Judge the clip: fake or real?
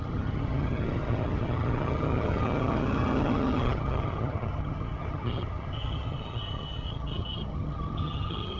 fake